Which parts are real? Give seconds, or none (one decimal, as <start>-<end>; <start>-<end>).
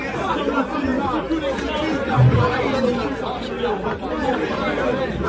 0.0-5.3